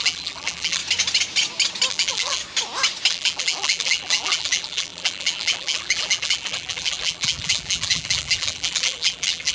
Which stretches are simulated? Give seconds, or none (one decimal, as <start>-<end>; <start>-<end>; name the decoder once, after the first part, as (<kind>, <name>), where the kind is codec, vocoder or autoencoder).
0.0-0.8 (vocoder, BigVGAN v2); 1.9-2.4; 3.1-9.5